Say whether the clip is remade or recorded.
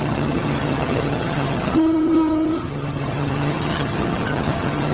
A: remade